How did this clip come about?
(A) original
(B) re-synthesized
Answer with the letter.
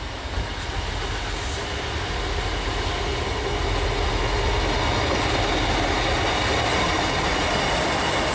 A